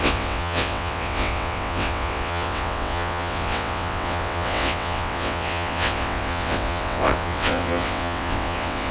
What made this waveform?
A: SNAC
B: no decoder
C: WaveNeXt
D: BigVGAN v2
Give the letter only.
C